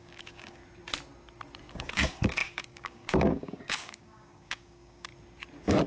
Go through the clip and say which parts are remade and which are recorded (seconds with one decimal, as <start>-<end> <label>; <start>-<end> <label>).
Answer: 0.0-0.6 remade; 0.6-1.7 recorded; 1.7-5.1 remade; 5.1-5.9 recorded